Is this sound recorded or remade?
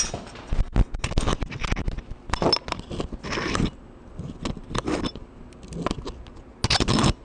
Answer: recorded